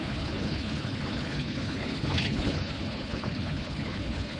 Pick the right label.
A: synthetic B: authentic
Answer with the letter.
A